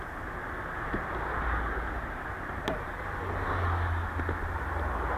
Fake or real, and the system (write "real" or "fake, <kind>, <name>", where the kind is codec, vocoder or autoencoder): real